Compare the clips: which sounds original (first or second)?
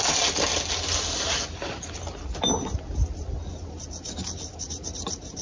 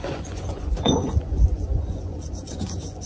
first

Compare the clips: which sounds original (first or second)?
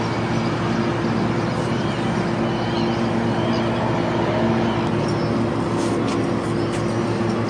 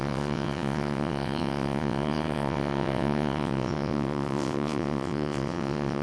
first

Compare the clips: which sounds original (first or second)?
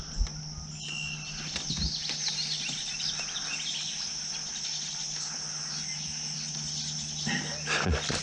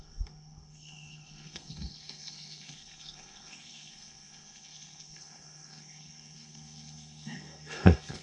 first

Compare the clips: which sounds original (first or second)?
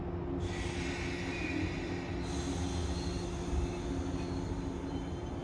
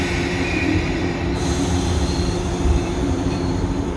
first